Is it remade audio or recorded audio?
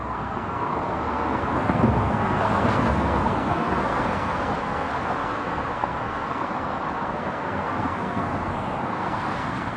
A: remade